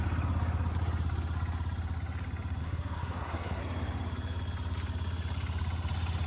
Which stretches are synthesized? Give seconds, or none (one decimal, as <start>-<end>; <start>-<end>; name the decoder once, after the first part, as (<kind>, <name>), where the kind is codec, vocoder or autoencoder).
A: 2.6-3.6 (codec, SNAC)

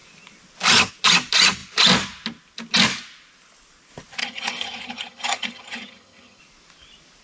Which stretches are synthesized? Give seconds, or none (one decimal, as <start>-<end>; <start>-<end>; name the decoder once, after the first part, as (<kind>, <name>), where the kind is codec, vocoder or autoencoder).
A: 4.2-6.4 (vocoder, HiFi-GAN)

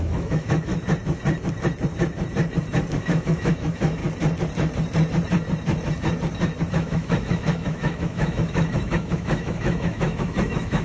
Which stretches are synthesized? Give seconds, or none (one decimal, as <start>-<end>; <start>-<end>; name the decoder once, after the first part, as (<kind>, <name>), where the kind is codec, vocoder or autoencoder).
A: 0.0-0.7 (autoencoder, DAC-VAE); 3.0-4.0; 6.7-10.8

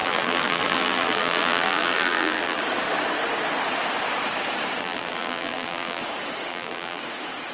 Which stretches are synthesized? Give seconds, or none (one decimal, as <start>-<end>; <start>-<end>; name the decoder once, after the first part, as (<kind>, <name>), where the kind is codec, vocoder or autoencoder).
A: 0.0-2.6 (vocoder, BigVGAN v2); 4.8-6.0; 6.5-7.0

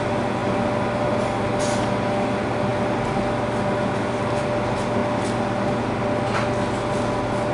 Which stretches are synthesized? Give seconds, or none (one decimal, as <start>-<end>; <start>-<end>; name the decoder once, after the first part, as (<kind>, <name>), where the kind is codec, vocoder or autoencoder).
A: none

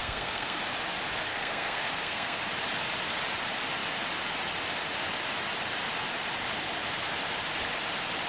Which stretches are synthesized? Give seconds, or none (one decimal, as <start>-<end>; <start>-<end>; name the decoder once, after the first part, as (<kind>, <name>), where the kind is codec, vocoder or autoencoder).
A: 0.0-0.6 (codec, SNAC); 1.3-2.4